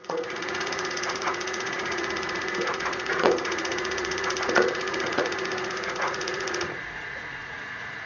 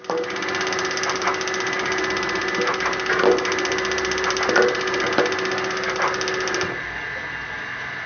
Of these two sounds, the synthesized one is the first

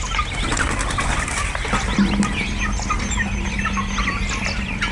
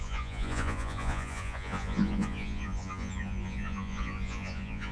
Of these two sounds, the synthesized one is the second